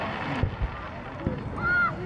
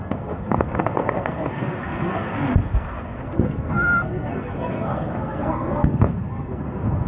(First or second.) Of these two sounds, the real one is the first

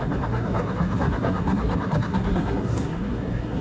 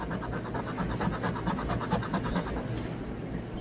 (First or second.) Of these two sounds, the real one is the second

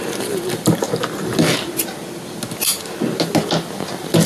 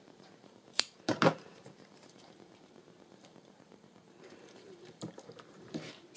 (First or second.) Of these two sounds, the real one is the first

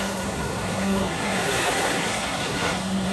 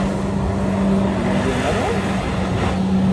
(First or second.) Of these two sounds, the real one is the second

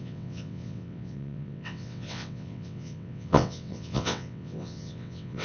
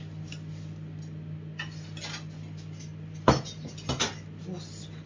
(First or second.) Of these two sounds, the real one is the second